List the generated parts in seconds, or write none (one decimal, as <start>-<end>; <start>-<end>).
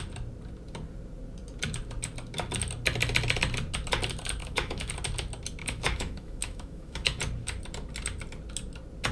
4.4-4.9; 5.6-7.2